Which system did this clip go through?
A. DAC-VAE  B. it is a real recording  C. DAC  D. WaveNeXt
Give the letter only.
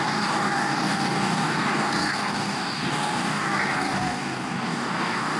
C